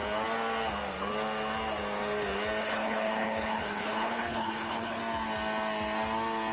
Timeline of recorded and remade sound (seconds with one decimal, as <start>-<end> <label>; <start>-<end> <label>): 0.0-2.6 recorded; 2.6-5.0 remade; 5.0-6.5 recorded